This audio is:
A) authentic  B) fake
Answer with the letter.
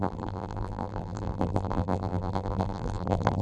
B